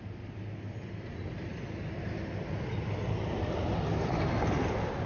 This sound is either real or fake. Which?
real